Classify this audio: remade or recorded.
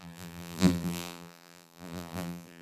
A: remade